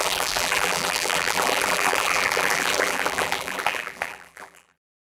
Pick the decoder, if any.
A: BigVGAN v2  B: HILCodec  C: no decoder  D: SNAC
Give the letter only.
A